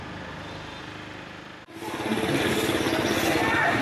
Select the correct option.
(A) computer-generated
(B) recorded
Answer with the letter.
B